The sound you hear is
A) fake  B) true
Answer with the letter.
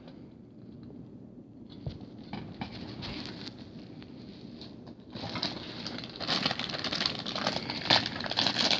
B